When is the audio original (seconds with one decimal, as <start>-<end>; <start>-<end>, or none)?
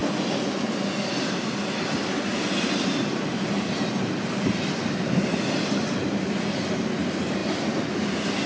0.0-8.5